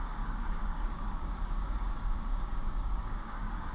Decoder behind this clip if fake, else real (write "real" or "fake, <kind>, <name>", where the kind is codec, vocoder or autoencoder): fake, codec, DAC